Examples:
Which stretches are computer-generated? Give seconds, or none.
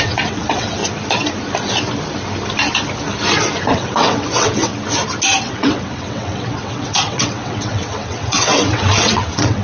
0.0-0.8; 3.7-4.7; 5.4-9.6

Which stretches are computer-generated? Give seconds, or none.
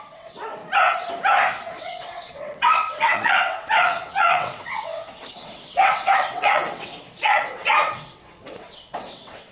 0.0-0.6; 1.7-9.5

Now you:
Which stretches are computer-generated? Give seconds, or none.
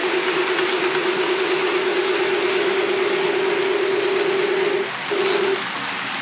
none